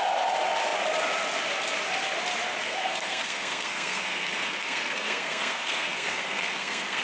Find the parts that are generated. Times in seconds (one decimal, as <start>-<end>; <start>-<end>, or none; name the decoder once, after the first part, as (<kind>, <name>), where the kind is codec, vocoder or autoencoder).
2.6-7.0 (codec, SNAC)